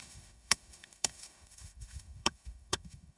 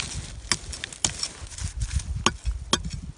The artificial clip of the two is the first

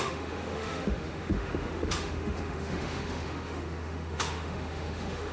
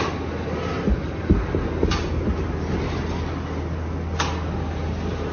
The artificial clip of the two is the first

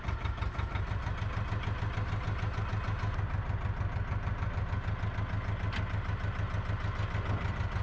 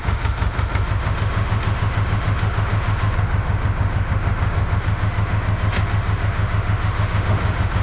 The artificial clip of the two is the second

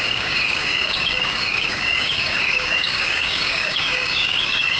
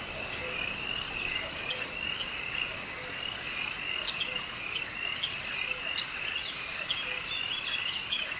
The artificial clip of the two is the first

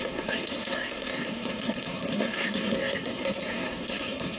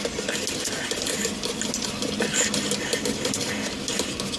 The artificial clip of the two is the first